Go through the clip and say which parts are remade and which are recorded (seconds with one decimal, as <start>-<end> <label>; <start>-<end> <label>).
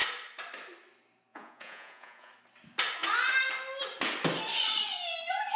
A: 0.0-1.3 recorded; 1.3-2.3 remade; 2.3-5.6 recorded